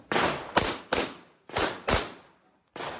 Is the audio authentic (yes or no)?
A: yes